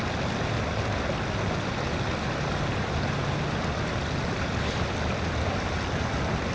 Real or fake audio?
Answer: real